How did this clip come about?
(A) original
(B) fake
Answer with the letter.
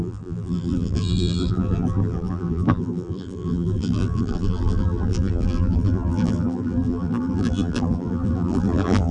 B